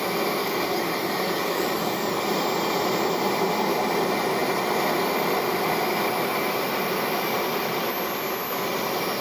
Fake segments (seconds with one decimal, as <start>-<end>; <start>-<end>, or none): 0.4-2.2